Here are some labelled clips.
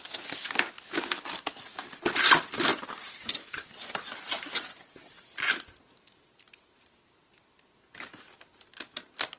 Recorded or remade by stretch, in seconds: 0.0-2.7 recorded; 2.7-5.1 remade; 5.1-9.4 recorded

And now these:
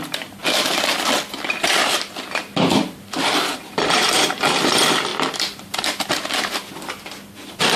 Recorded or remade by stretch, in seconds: 0.0-0.4 remade; 0.4-1.6 recorded; 1.6-7.8 remade

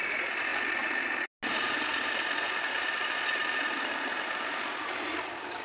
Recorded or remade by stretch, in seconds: 0.0-1.9 recorded; 1.9-5.6 remade

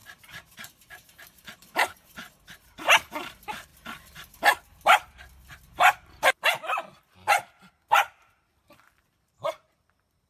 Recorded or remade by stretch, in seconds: 0.0-2.3 remade; 2.3-10.3 recorded

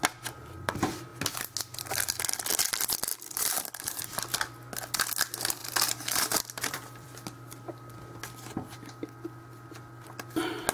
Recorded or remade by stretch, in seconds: 0.0-3.1 recorded; 3.1-4.0 remade; 4.0-5.6 recorded; 5.6-8.2 remade; 8.2-10.7 recorded

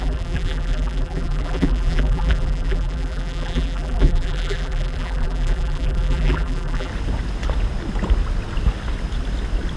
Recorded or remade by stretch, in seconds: 0.0-6.9 remade; 6.9-9.8 recorded

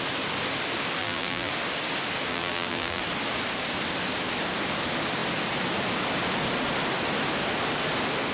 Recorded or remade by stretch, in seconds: 0.0-1.0 recorded; 1.0-1.5 remade; 1.5-2.3 recorded; 2.3-3.0 remade; 3.0-8.3 recorded

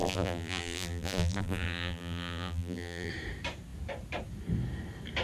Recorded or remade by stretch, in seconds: 0.0-3.1 remade; 3.1-5.2 recorded